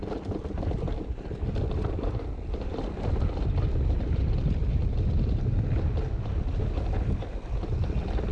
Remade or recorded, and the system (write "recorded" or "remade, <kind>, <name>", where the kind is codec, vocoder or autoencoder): recorded